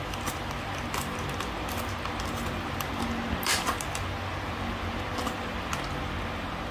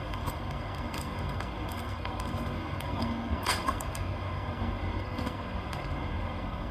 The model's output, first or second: second